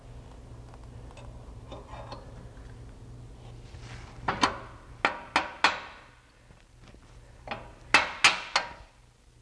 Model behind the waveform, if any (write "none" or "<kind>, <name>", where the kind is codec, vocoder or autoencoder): none